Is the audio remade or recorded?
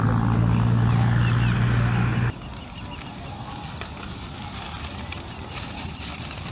recorded